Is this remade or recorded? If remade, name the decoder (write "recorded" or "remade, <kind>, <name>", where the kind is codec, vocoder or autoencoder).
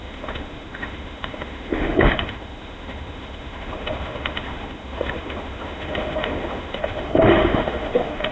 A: remade, autoencoder, DAC-VAE